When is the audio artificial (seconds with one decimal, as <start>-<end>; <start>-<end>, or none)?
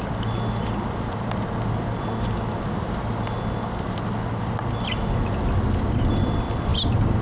none